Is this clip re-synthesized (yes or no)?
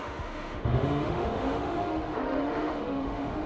yes